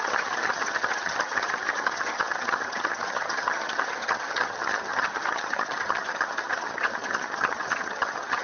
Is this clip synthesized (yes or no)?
yes